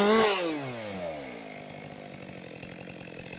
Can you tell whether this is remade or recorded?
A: recorded